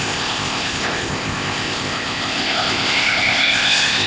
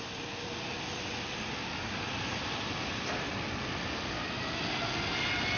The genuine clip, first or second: second